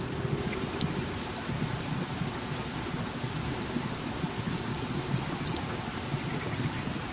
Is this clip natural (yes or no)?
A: yes